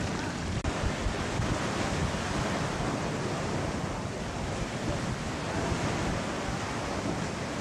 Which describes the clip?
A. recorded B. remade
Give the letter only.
A